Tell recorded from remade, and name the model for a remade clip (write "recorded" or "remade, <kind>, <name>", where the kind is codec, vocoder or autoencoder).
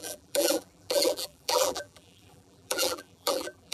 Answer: remade, vocoder, BigVGAN v2